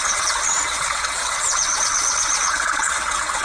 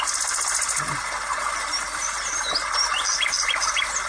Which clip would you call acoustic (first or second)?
second